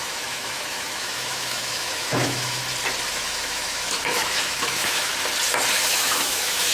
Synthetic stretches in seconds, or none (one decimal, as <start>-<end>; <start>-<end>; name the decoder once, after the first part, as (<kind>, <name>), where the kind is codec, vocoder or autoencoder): 0.0-2.6 (autoencoder, DAC-VAE); 3.1-5.1; 5.9-6.7